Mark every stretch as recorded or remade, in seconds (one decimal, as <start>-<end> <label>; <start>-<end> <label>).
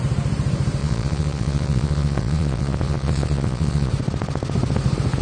0.0-0.8 recorded; 0.8-3.9 remade; 3.9-5.2 recorded